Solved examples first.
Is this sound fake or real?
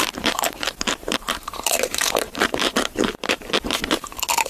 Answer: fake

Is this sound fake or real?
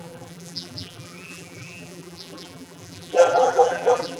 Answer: fake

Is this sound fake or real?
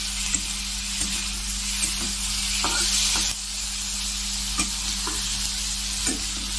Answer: real